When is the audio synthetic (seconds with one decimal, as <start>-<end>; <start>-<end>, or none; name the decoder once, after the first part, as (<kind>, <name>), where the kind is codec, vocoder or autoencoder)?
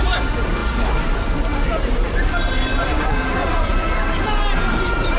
none